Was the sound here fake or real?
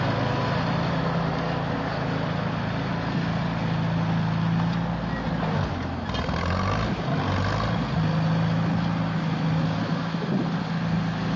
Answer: real